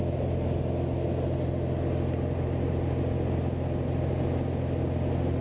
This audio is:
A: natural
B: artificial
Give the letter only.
A